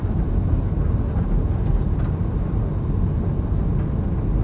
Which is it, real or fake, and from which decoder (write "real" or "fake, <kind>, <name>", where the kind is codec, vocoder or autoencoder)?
real